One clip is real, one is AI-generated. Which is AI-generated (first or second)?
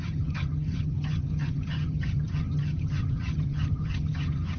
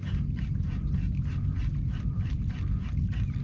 first